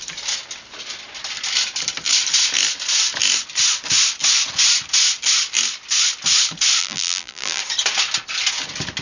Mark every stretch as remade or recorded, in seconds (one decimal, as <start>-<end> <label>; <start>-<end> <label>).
0.0-6.8 recorded; 6.8-7.6 remade; 7.6-9.0 recorded